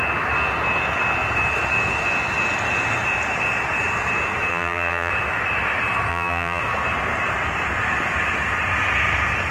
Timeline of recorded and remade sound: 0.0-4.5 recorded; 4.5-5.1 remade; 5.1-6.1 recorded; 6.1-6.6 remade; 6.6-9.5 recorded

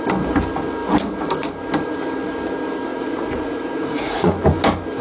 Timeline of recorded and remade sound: 0.0-2.9 recorded; 2.9-4.3 remade; 4.3-5.0 recorded

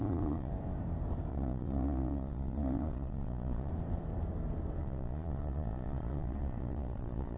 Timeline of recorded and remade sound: 0.0-0.5 remade; 0.5-1.3 recorded; 1.3-3.7 remade; 3.7-4.8 recorded; 4.8-7.4 remade